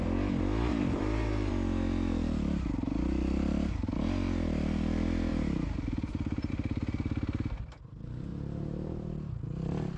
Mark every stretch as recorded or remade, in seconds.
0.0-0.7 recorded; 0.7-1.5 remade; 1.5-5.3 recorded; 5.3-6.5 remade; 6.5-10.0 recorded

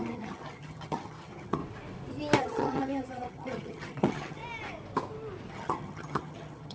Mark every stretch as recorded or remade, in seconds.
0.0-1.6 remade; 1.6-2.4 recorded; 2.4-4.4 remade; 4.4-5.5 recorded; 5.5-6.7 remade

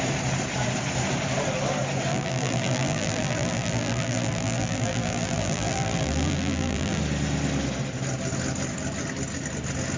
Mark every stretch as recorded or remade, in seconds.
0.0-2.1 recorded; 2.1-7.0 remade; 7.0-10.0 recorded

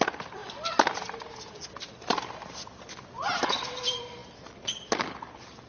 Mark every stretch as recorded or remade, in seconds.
0.0-5.7 recorded

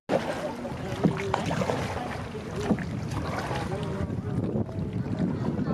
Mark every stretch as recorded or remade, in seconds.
0.0-5.7 recorded